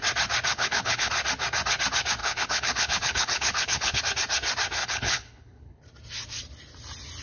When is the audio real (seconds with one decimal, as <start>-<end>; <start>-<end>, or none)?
0.0-0.5; 1.1-2.2; 4.0-4.8; 5.8-7.2